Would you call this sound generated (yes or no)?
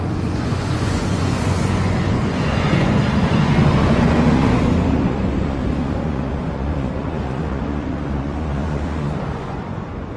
yes